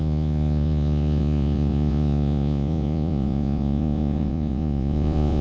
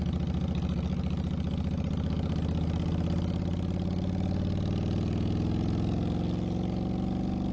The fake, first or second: first